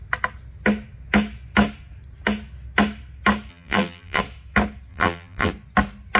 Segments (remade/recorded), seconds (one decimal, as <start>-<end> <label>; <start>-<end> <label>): 0.0-3.5 recorded; 3.5-4.2 remade; 4.2-4.9 recorded; 4.9-5.5 remade; 5.5-6.2 recorded